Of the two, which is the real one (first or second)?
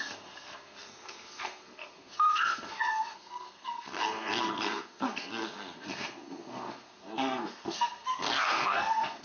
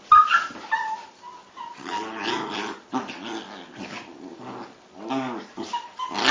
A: second